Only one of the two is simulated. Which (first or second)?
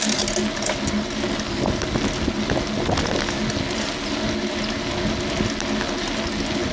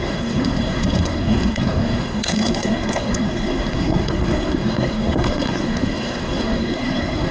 second